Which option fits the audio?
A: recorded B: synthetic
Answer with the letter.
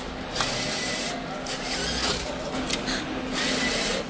A